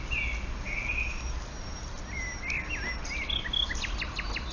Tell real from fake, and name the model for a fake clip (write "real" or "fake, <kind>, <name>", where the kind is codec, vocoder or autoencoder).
real